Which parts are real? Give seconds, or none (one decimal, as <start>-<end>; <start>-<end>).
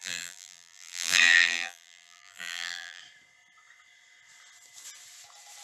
3.0-5.6